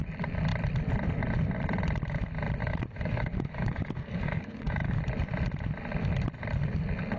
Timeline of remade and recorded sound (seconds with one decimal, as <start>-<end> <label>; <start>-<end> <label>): 0.0-2.6 recorded; 2.6-5.0 remade; 5.0-7.2 recorded